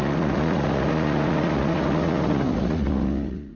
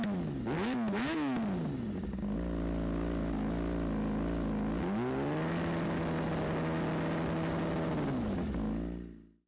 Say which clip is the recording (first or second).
second